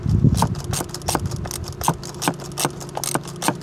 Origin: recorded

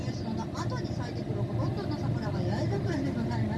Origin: recorded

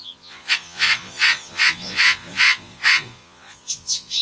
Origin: remade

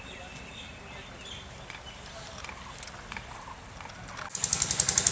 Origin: recorded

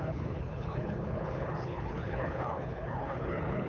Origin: remade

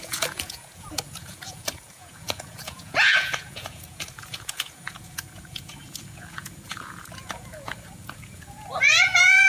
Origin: remade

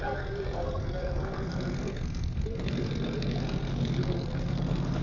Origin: remade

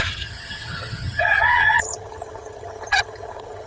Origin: remade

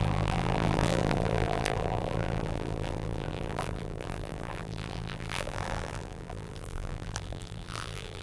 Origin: remade